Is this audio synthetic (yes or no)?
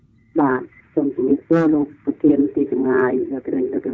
yes